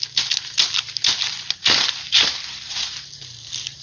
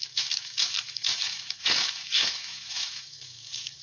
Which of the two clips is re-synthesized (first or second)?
second